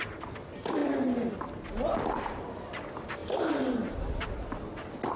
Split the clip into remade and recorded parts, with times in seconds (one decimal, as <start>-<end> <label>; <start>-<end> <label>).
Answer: 0.0-3.2 recorded; 3.2-4.0 remade; 4.0-5.2 recorded